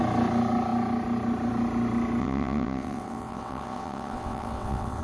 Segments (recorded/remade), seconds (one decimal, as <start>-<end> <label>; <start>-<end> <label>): 0.0-2.2 recorded; 2.2-5.0 remade